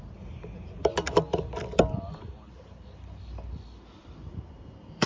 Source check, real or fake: real